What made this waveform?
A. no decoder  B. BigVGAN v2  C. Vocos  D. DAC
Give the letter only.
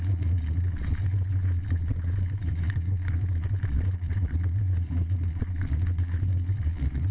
C